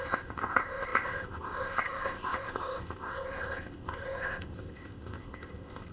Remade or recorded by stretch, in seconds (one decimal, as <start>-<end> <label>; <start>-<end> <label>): 0.0-5.9 remade